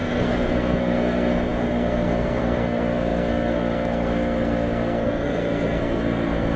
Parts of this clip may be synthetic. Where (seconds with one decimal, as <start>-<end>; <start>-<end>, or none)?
0.0-6.6